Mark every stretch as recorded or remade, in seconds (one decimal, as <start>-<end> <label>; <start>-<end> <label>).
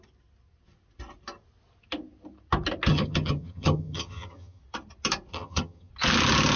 0.0-2.9 recorded; 2.9-4.6 remade; 4.6-5.3 recorded; 5.3-5.9 remade; 5.9-6.6 recorded